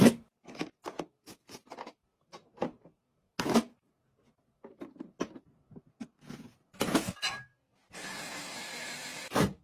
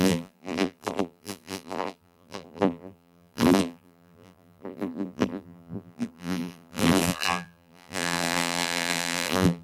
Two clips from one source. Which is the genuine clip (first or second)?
first